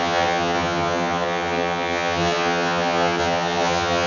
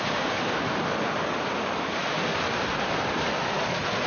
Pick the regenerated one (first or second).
first